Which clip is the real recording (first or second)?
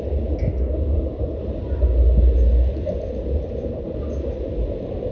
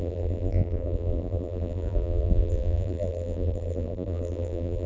first